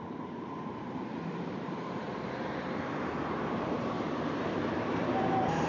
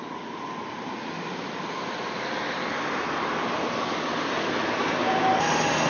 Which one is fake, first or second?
first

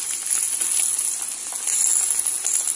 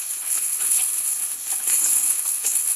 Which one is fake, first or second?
second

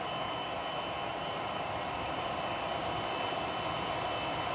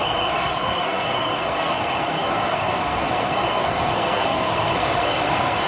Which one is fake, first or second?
second